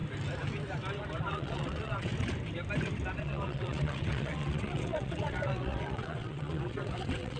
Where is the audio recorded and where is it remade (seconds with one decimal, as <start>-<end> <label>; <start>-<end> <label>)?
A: 0.0-1.3 recorded; 1.3-2.1 remade; 2.1-3.2 recorded; 3.2-7.4 remade

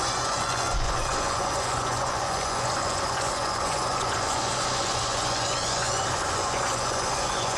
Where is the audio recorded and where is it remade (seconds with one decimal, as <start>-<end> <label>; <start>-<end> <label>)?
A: 0.0-7.6 remade